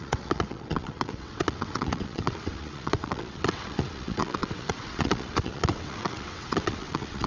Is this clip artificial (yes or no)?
yes